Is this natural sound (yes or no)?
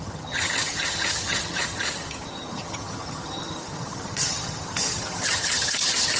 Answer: no